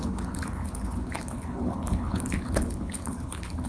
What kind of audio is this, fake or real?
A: fake